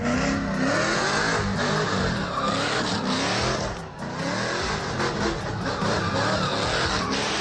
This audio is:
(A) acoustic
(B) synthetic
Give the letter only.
A